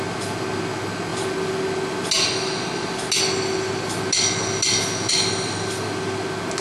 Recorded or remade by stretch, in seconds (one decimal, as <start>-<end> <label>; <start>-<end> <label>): 0.0-6.6 recorded